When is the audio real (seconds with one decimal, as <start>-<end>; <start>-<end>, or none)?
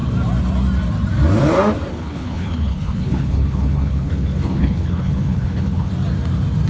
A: 0.0-1.9; 5.9-6.7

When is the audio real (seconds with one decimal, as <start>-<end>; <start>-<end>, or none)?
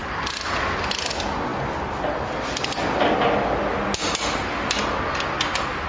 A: 0.0-5.9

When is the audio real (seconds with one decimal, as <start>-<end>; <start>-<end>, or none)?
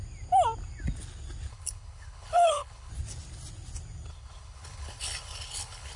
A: 0.0-1.5; 2.9-4.1